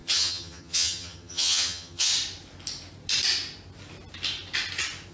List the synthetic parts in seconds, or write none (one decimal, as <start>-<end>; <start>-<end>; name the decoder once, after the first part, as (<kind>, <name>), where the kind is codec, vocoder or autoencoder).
0.0-2.1 (vocoder, HiFi-GAN)